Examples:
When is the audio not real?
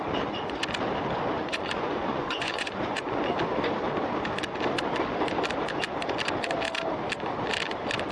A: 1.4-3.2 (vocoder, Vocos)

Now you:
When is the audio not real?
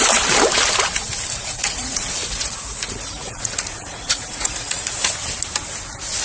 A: 1.4-5.1 (vocoder, Vocos)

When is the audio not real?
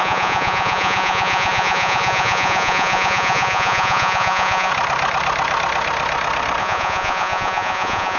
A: 0.0-4.7 (vocoder, Vocos); 6.6-8.2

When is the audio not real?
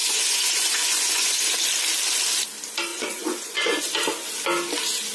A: 0.0-1.4 (vocoder, Vocos); 2.9-3.8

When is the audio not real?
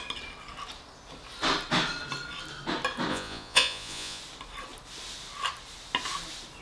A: 3.1-4.2 (vocoder, Vocos)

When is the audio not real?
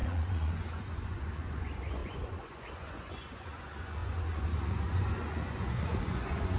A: 0.0-6.6 (vocoder, Vocos)